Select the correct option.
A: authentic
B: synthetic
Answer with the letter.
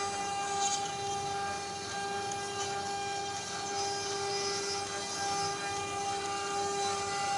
A